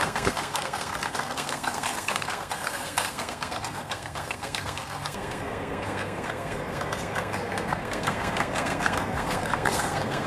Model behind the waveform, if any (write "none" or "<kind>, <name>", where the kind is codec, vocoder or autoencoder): codec, SNAC